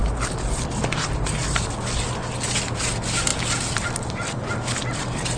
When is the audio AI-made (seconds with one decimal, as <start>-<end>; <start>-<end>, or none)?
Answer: 3.3-4.5

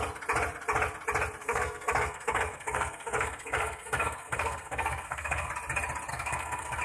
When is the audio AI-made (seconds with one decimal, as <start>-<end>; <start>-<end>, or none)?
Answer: 1.4-5.5; 6.1-6.8

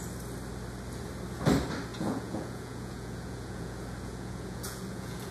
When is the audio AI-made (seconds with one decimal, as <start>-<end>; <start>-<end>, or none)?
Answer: 1.9-5.3

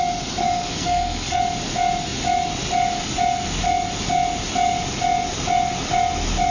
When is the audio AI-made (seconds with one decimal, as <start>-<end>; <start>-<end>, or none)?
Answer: 0.4-1.4

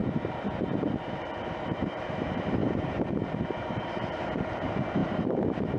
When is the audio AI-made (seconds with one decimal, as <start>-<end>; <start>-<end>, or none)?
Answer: 0.0-5.8